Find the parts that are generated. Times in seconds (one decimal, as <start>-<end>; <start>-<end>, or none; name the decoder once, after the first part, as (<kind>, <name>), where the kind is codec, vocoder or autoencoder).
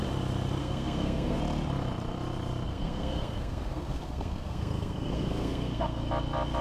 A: 0.6-1.4 (codec, SNAC); 2.7-6.0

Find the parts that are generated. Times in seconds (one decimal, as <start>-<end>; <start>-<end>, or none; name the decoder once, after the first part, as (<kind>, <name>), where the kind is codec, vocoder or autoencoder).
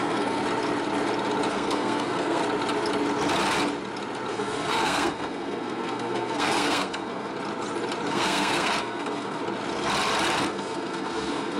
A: 0.0-0.4 (codec, SNAC); 1.5-2.4; 4.3-7.3; 8.1-9.4; 10.4-11.6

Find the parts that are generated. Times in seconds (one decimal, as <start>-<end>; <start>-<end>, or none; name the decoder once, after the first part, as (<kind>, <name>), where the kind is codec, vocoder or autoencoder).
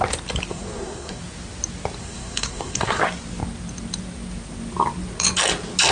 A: 0.5-1.2 (codec, SNAC); 2.0-3.0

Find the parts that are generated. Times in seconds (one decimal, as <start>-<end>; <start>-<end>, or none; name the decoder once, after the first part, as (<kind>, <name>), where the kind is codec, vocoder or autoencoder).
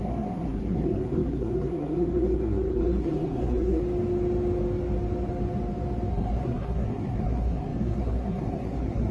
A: 0.0-3.8 (codec, SNAC); 6.1-9.1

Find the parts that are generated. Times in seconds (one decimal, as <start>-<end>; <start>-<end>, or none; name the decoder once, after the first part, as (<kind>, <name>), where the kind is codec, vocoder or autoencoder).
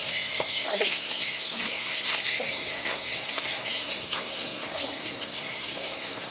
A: 0.0-6.3 (codec, SNAC)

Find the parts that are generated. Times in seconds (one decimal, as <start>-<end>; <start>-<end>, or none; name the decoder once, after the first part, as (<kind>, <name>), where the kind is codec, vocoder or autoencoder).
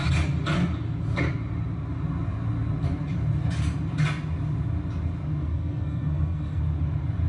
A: 5.4-6.6 (codec, SNAC)